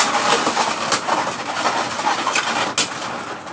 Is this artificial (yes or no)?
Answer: no